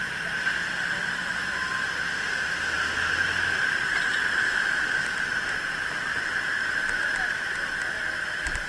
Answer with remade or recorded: recorded